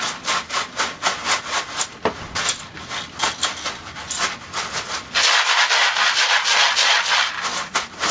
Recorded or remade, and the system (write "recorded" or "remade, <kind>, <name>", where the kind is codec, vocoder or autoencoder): recorded